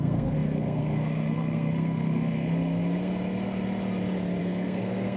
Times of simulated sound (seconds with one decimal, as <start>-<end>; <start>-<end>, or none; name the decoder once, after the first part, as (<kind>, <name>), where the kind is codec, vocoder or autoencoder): 0.0-3.1 (codec, SNAC); 4.4-5.2